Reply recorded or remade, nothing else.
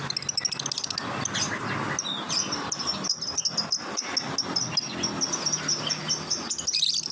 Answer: recorded